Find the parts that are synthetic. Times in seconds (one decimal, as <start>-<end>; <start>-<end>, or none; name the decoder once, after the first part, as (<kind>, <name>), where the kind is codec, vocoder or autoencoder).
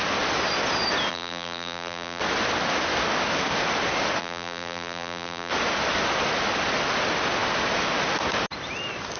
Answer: 1.1-2.2 (vocoder, BigVGAN v2); 4.2-5.5